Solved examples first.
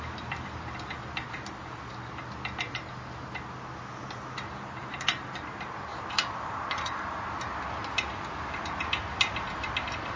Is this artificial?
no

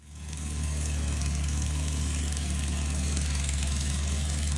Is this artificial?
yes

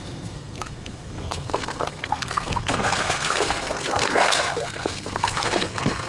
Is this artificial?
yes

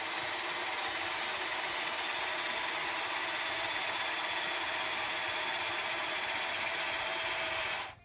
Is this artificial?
no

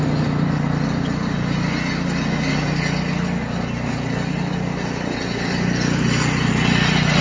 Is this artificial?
no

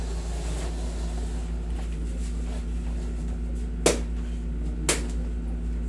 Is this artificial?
no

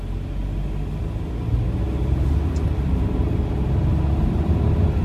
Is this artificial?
no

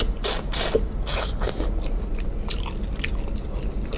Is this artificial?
no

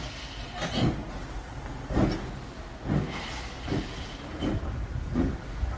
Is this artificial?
no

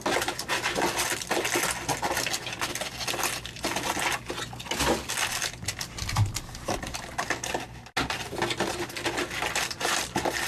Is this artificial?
no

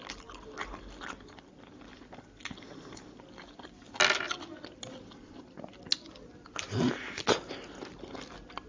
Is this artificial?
no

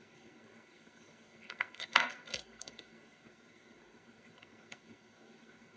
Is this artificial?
yes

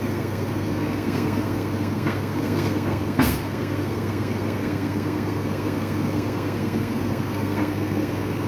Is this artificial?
yes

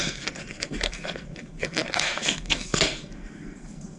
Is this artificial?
yes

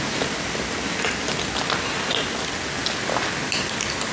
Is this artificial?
no